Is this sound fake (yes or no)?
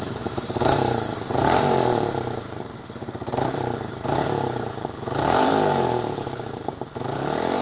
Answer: yes